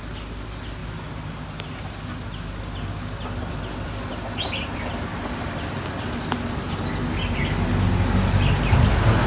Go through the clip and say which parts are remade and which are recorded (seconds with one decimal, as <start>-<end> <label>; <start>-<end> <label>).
0.0-9.3 recorded